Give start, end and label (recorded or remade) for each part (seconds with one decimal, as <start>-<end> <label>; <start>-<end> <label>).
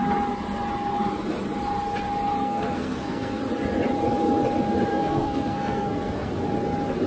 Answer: 0.0-2.4 recorded; 2.4-3.4 remade; 3.4-4.9 recorded; 4.9-6.3 remade; 6.3-7.1 recorded